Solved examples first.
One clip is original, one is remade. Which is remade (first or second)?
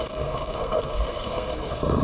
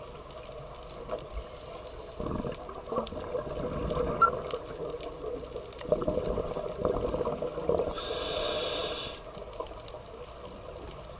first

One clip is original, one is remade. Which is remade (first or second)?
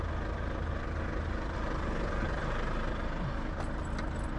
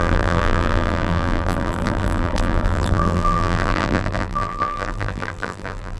second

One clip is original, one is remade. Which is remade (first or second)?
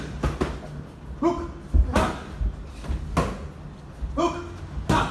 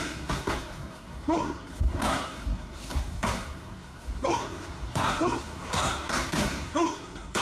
second